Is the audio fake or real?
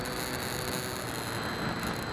real